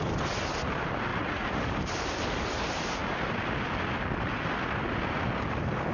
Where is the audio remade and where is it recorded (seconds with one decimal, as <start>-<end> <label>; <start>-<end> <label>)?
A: 0.0-1.1 recorded; 1.1-1.6 remade; 1.6-5.9 recorded